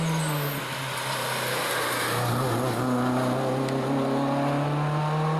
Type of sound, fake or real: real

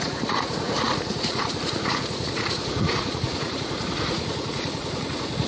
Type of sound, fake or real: fake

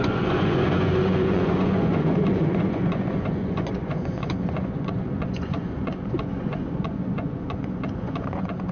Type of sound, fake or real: fake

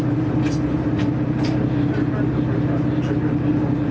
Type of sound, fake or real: real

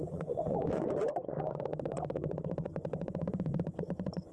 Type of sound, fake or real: fake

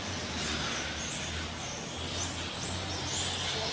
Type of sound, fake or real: real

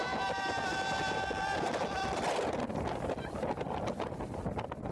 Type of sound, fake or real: real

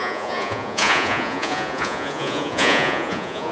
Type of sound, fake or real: fake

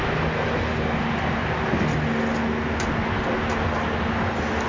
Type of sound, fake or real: real